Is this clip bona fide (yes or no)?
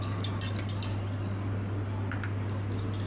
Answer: yes